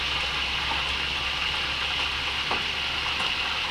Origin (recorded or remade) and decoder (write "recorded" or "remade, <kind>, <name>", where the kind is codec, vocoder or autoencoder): recorded